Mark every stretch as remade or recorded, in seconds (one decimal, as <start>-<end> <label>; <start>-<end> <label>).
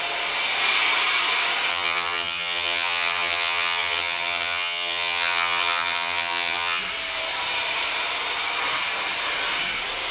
0.0-1.7 recorded; 1.7-6.8 remade; 6.8-10.1 recorded